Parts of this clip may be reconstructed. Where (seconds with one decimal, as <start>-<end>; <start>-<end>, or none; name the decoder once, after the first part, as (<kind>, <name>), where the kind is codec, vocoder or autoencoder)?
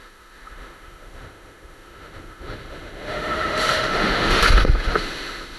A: 0.0-5.6 (autoencoder, DAC-VAE)